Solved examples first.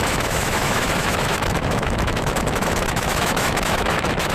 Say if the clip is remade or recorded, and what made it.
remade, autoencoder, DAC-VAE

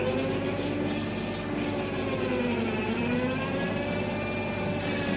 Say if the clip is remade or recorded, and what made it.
recorded